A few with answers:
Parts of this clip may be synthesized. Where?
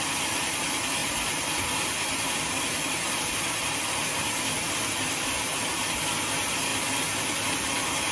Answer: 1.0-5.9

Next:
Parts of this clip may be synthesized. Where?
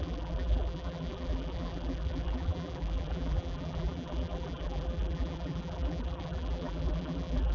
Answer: 0.0-7.5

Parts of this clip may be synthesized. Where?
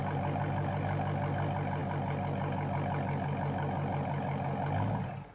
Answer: none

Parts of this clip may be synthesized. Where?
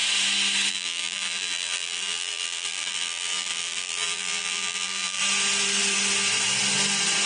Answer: 0.7-5.2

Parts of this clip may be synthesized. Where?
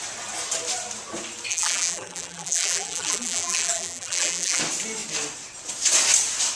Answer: 1.5-4.6